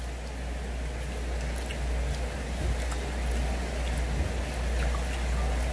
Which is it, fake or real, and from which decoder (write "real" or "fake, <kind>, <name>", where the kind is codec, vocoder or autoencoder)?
real